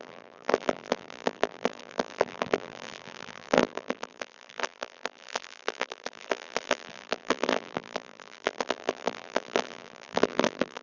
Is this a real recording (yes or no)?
no